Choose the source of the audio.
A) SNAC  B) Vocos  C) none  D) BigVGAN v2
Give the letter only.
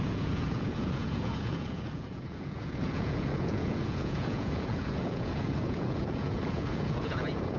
B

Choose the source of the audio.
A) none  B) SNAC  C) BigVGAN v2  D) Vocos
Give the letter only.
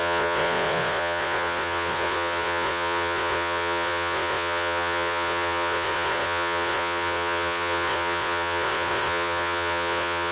D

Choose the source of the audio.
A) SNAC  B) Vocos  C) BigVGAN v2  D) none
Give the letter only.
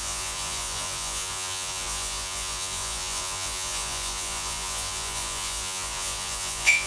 B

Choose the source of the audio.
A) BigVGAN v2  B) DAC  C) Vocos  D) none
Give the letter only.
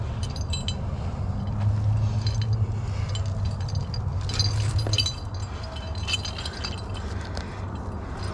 D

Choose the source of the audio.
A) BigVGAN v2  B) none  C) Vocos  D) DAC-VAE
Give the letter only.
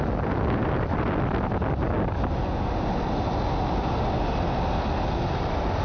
B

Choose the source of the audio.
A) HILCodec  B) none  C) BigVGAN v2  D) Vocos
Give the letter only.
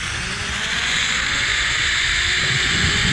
D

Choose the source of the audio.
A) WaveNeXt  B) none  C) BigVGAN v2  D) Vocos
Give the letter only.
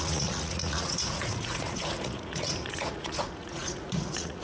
D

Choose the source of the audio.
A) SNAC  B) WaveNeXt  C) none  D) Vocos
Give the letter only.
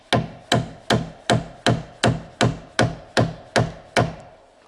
C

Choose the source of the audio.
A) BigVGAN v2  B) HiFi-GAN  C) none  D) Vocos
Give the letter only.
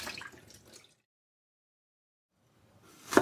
C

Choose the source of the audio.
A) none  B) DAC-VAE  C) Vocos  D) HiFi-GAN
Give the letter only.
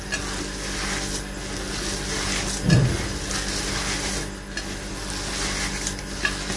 A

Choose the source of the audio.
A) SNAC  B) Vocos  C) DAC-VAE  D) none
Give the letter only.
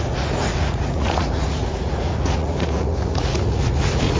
B